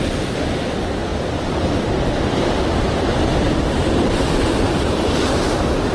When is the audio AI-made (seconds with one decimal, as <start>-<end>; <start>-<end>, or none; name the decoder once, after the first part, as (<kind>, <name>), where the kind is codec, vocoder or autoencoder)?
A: none